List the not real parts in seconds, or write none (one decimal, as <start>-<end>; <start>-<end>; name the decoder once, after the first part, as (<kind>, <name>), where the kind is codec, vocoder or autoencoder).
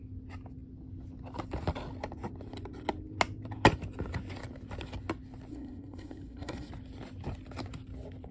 5.5-6.7 (codec, SNAC)